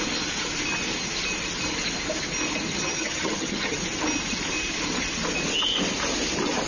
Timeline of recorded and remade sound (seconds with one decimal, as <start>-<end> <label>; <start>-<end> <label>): 0.0-2.7 recorded; 2.7-3.8 remade; 3.8-6.7 recorded